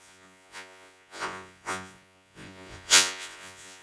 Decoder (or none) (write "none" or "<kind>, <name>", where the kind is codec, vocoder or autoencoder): vocoder, Vocos